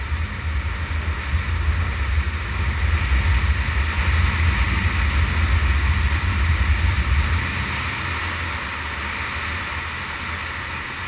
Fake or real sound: real